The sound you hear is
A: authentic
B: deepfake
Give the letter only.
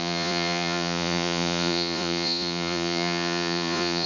B